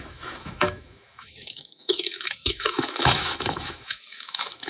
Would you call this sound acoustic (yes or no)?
no